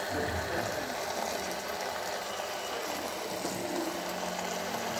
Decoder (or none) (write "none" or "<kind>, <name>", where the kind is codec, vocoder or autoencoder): none